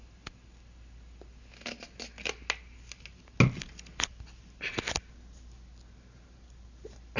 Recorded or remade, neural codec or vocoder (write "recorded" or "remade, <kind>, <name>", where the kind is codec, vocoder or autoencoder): recorded